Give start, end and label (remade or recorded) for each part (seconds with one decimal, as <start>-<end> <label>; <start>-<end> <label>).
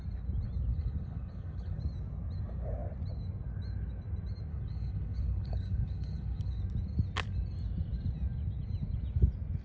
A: 0.0-0.7 recorded; 0.7-1.8 remade; 1.8-4.5 recorded; 4.5-6.6 remade; 6.6-9.6 recorded